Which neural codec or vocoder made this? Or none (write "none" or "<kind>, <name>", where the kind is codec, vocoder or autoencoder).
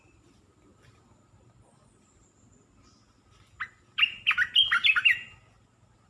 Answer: none